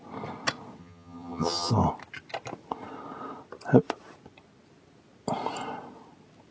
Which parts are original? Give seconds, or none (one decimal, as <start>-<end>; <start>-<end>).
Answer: 0.0-0.8; 1.7-6.5